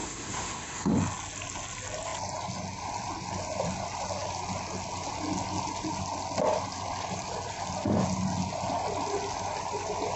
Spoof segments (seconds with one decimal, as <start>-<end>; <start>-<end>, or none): 0.0-0.9